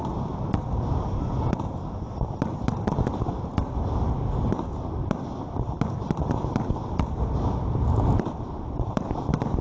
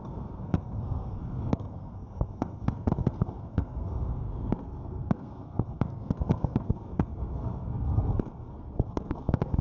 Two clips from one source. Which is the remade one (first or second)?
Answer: second